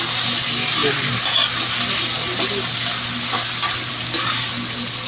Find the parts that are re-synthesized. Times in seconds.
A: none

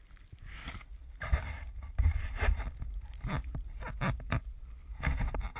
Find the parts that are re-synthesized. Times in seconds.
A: 1.3-4.7 (vocoder, BigVGAN v2)

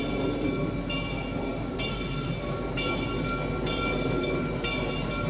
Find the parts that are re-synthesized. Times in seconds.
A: none

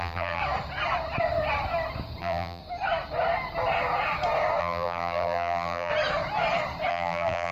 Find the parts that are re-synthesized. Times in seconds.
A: 0.0-0.4 (vocoder, BigVGAN v2); 2.2-2.6; 4.6-5.9; 6.9-7.5

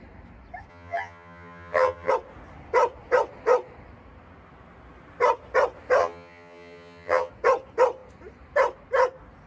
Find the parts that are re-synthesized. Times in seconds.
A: 0.7-2.1 (vocoder, HiFi-GAN); 6.0-7.3

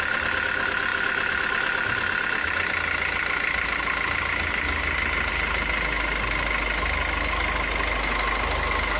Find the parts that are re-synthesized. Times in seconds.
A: none

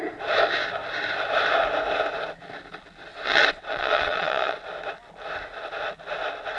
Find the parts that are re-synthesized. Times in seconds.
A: 3.1-4.6 (vocoder, WaveNeXt)

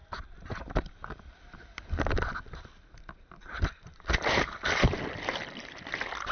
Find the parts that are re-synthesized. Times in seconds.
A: none